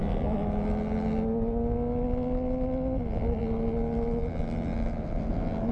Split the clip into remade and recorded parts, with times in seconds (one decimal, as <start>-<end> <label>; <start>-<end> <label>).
0.0-5.7 recorded